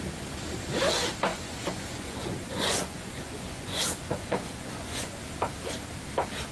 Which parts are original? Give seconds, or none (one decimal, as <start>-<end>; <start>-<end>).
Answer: 0.0-1.3; 5.2-6.5